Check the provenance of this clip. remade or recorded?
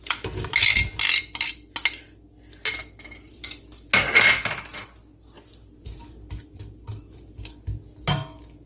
recorded